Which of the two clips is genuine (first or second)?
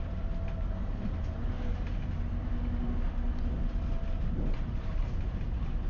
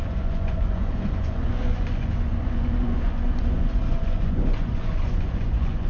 first